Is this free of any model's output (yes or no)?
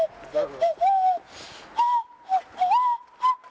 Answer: yes